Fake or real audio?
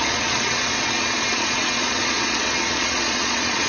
fake